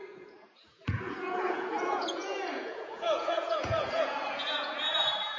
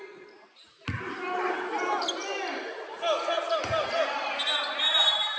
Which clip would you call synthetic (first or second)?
first